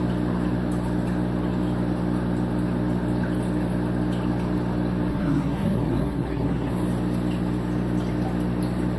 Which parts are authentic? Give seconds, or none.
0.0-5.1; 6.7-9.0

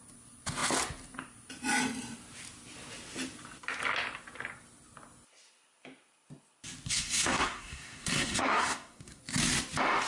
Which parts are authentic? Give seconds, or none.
0.0-6.9; 9.2-10.1